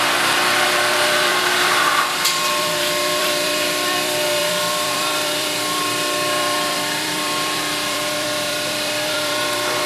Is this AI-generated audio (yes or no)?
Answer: yes